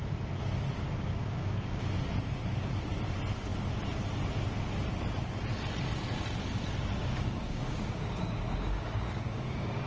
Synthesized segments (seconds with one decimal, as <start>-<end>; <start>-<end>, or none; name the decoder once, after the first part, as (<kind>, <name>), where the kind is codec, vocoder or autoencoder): 1.2-1.8 (codec, DAC); 7.0-9.9